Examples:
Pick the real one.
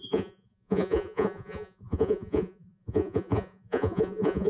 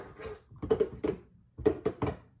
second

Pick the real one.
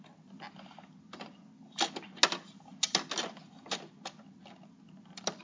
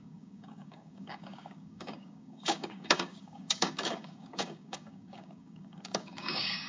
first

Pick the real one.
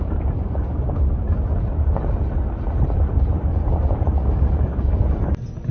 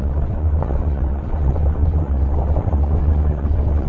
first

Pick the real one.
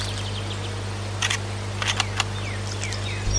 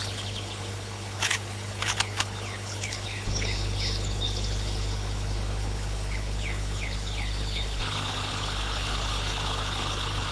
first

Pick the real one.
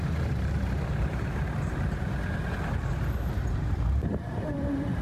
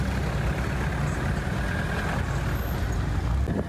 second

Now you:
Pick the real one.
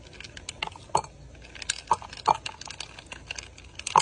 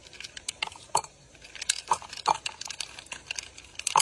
first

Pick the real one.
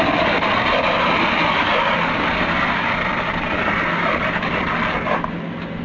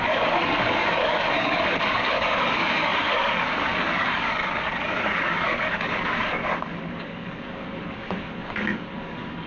first